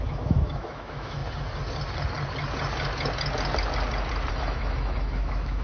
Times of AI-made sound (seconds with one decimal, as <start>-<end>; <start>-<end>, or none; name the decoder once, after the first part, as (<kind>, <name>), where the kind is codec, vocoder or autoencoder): 0.0-1.2 (autoencoder, DAC-VAE); 4.3-5.6